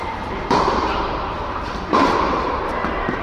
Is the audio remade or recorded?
remade